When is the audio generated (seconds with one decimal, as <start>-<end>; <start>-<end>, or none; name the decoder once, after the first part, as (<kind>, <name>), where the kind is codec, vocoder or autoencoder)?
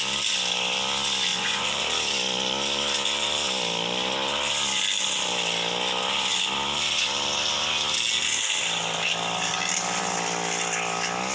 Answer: 1.3-1.8 (vocoder, Vocos)